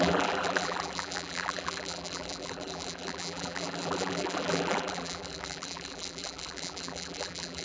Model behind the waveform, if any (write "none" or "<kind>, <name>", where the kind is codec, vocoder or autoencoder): vocoder, BigVGAN v2